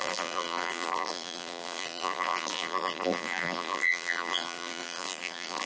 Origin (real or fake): fake